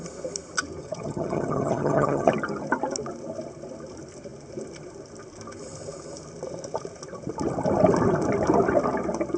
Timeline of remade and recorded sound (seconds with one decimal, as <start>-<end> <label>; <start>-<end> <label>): 0.0-0.8 recorded; 0.8-2.3 remade; 2.3-9.4 recorded